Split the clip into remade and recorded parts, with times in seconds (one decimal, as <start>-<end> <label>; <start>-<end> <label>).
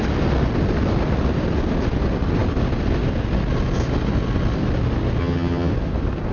0.0-5.2 recorded; 5.2-5.7 remade; 5.7-6.3 recorded